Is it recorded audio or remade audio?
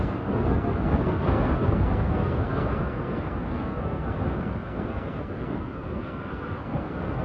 remade